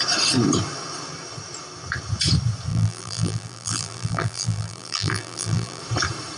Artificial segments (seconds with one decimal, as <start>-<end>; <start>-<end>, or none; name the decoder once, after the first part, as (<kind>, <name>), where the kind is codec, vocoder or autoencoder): 2.7-5.8 (vocoder, BigVGAN v2)